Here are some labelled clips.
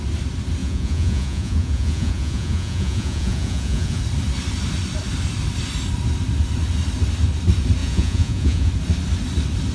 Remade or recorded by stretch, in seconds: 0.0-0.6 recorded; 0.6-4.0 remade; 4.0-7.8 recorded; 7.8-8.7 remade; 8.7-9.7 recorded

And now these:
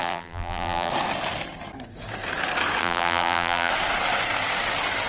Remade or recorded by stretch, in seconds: 0.0-0.9 remade; 0.9-2.8 recorded; 2.8-3.7 remade; 3.7-5.1 recorded

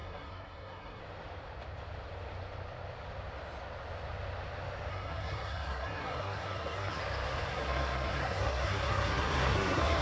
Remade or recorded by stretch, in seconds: 0.0-1.0 remade; 1.0-4.9 recorded; 4.9-7.0 remade; 7.0-7.5 recorded; 7.5-10.0 remade